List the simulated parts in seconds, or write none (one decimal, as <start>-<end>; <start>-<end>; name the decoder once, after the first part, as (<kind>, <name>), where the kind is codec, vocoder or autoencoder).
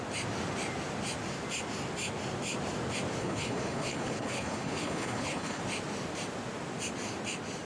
3.2-5.6 (codec, HILCodec)